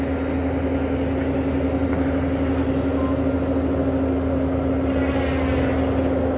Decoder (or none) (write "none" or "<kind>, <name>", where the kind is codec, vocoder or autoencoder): none